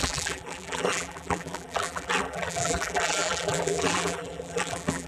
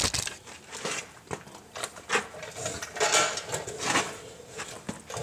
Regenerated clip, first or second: first